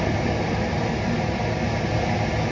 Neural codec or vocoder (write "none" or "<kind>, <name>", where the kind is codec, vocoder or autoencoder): none